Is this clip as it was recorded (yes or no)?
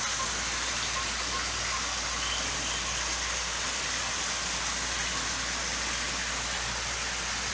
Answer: yes